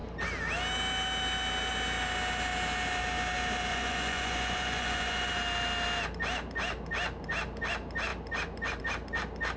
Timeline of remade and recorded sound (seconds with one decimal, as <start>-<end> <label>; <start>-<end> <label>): 0.0-3.7 recorded; 3.7-5.3 remade; 5.3-9.6 recorded